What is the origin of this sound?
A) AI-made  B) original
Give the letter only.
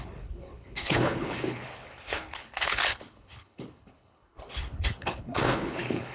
A